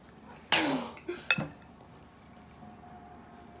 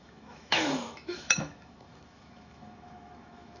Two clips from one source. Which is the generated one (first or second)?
second